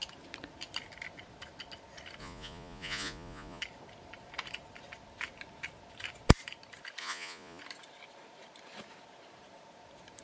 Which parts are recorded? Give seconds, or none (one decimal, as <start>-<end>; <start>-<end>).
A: 0.0-2.2; 3.6-7.0; 7.6-10.2